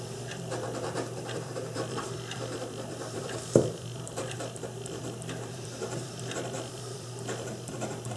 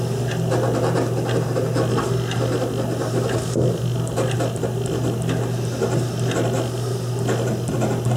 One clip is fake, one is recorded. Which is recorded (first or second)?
second